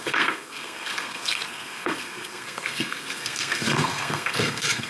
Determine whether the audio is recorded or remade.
remade